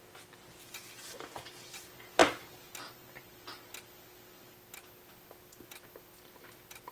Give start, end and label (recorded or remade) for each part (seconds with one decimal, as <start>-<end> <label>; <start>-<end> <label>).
0.0-6.9 recorded